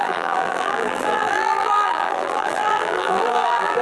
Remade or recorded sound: remade